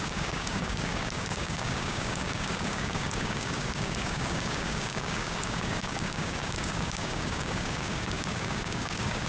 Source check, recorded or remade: remade